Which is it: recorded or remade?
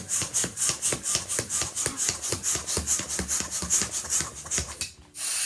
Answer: recorded